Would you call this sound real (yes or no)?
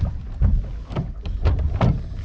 yes